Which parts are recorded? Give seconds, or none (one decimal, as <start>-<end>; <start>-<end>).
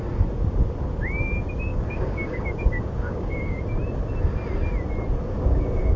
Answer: 0.0-1.7; 3.6-5.2